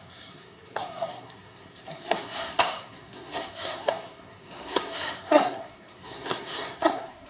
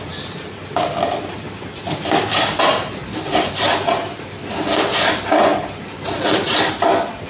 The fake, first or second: first